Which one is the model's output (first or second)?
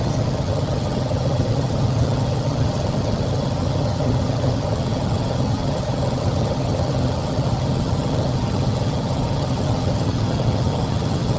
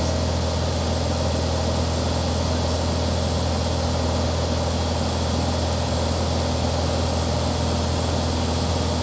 first